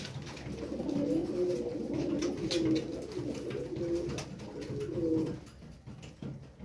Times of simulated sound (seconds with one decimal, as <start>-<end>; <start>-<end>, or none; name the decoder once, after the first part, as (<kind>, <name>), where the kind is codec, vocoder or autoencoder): none

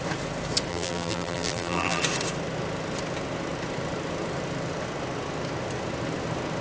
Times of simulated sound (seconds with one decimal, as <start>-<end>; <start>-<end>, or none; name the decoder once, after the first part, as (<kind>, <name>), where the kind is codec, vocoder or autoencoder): 0.7-2.0 (vocoder, BigVGAN v2)

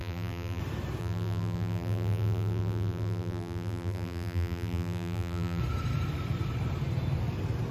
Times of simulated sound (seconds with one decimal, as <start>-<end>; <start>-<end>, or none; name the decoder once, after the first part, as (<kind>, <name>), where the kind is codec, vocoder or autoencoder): 0.0-0.6 (vocoder, BigVGAN v2); 1.0-5.6

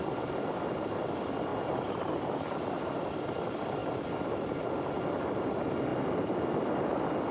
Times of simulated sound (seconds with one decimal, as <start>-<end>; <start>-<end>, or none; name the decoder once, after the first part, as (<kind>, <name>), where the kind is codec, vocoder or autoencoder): 1.5-2.1 (vocoder, BigVGAN v2)

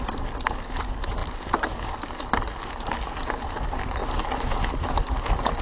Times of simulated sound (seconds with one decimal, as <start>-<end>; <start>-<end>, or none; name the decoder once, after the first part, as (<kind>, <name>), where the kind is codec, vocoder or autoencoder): 4.0-5.6 (vocoder, BigVGAN v2)

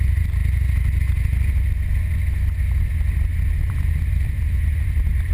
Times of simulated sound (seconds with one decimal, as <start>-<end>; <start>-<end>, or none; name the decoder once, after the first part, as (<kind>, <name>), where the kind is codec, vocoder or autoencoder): 0.0-0.4 (vocoder, BigVGAN v2); 2.9-5.3